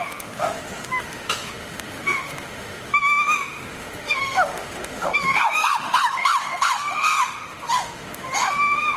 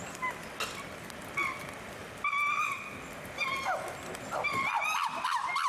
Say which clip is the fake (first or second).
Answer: first